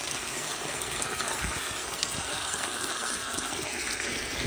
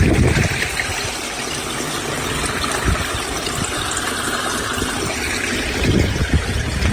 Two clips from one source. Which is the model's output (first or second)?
first